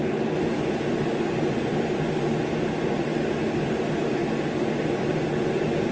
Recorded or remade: recorded